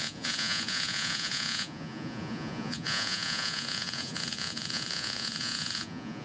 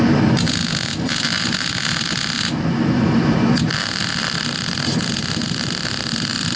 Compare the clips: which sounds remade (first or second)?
first